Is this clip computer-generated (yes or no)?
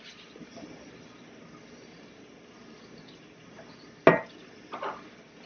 no